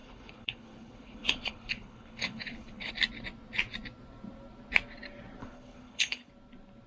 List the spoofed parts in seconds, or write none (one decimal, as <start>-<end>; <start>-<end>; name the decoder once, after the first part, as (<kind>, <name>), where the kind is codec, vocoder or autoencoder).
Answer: 0.0-2.9 (codec, HILCodec); 5.4-6.3